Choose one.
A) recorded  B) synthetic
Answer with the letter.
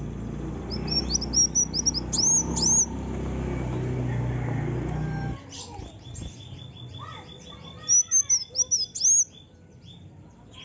A